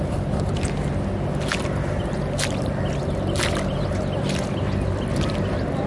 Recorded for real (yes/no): yes